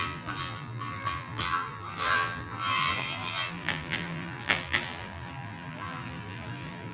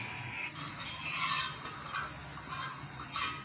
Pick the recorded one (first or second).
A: second